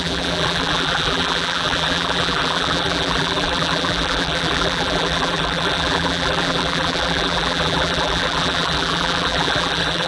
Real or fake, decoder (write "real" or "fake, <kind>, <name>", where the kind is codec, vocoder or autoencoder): fake, vocoder, BigVGAN v2